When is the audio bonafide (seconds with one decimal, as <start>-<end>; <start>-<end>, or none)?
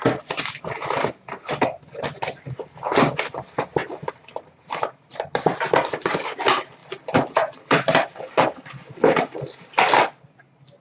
0.0-3.8; 6.1-6.8; 9.8-10.8